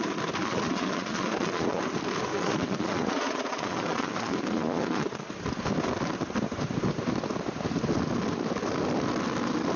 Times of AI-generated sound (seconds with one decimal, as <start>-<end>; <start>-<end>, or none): 0.4-1.8; 2.3-5.3